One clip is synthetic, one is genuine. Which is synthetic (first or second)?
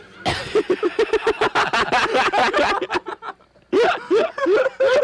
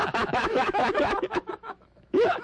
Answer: second